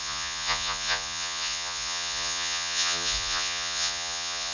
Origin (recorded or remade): remade